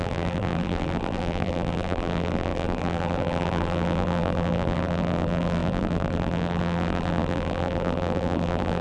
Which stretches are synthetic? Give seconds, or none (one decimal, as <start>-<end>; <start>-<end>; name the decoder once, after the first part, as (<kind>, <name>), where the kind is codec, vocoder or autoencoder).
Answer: 0.0-8.8 (vocoder, BigVGAN v2)